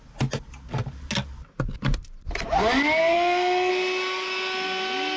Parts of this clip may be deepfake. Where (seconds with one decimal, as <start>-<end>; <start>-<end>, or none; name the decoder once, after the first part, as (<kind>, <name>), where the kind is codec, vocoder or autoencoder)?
3.0-3.7 (codec, SNAC)